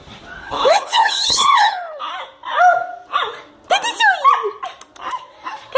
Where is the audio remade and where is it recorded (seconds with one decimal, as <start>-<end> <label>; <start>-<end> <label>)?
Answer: 0.0-0.4 recorded; 0.4-2.0 remade; 2.0-5.8 recorded